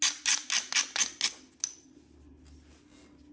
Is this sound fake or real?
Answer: real